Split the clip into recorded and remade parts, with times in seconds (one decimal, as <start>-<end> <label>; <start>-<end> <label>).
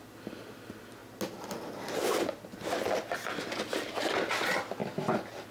0.0-5.5 recorded